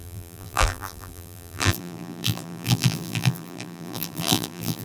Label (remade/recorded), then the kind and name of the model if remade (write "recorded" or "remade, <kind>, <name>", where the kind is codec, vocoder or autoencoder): remade, vocoder, BigVGAN v2